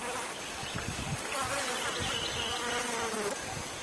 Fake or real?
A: real